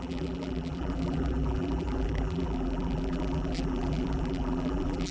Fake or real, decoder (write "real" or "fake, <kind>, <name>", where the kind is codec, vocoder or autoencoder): fake, vocoder, BigVGAN v2